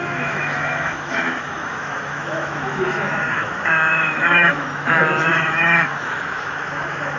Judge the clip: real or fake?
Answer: fake